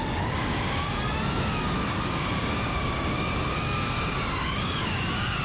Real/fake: fake